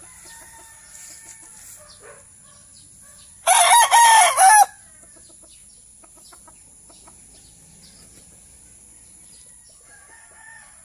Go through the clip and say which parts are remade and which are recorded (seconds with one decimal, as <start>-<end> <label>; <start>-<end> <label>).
0.0-10.8 recorded